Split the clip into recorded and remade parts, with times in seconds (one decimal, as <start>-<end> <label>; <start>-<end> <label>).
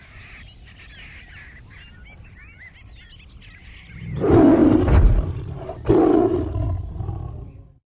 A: 0.0-4.6 recorded; 4.6-5.9 remade; 5.9-8.0 recorded